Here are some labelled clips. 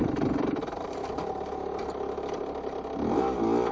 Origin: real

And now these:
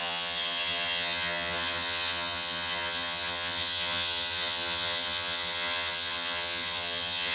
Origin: fake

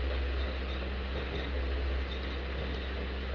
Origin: real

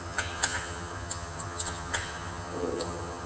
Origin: fake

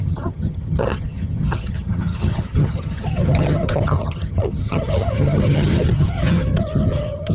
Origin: fake